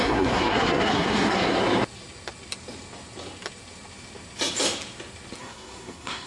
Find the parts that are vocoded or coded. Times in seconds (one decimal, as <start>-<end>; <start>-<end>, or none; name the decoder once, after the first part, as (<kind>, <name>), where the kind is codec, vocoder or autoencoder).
0.0-1.6 (codec, SNAC); 5.4-6.3